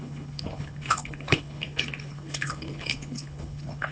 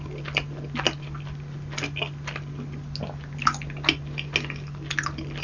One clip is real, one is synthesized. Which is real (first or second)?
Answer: second